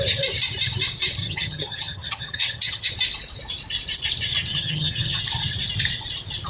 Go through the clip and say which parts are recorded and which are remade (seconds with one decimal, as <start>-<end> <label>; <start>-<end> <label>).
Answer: 0.0-1.2 recorded; 1.2-2.9 remade; 2.9-4.5 recorded; 4.5-5.2 remade; 5.2-6.5 recorded